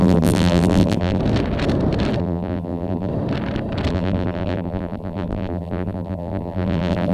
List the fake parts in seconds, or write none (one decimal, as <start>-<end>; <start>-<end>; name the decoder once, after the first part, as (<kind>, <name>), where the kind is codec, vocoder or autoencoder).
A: 0.0-1.2 (vocoder, BigVGAN v2); 2.2-3.1; 3.9-7.1